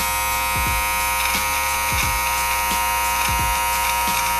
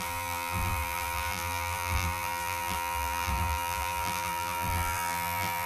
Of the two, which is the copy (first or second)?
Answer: second